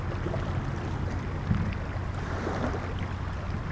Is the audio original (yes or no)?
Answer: yes